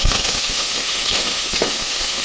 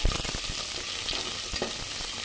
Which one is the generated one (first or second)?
first